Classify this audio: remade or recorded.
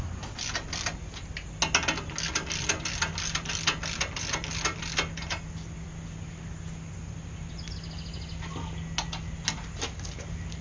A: recorded